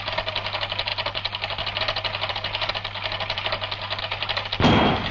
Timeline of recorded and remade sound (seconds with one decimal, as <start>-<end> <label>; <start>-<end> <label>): 0.0-5.1 recorded